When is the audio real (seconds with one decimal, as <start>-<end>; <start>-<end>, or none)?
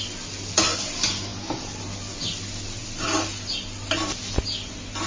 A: 0.0-5.1